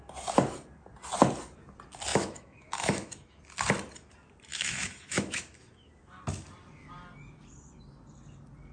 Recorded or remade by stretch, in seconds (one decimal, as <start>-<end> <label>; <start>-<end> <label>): 0.0-2.1 recorded; 2.1-3.4 remade; 3.4-4.5 recorded; 4.5-5.9 remade; 5.9-8.7 recorded